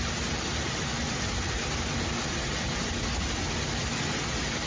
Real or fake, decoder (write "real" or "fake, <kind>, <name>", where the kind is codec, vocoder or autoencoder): real